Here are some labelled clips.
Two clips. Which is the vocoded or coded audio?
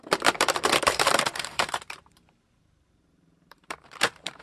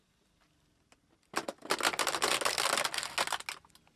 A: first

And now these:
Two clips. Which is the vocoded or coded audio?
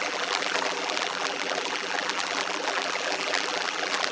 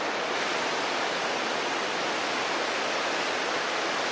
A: first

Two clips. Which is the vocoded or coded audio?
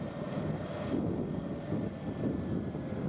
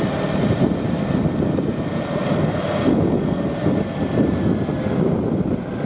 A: second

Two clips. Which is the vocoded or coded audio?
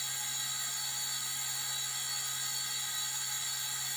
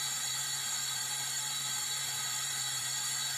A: second